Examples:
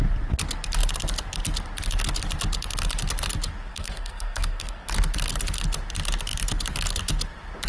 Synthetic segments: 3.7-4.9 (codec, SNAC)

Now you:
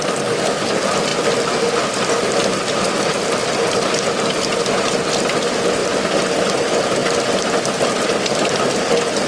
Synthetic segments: none

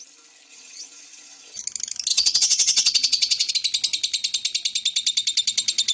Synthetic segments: 0.5-1.6 (vocoder, WaveNeXt); 2.1-3.5

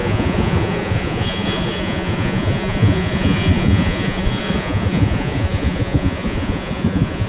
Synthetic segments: 0.0-7.3 (vocoder, Vocos)

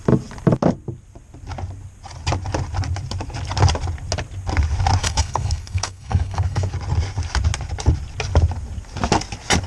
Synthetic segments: 5.0-6.7 (codec, SNAC)

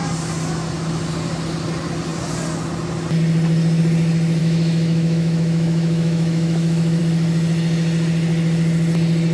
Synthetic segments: 4.4-7.0 (autoencoder, DAC-VAE)

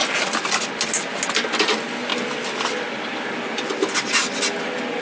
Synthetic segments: none